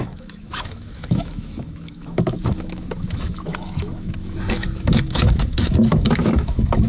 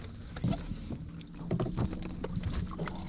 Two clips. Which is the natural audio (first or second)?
second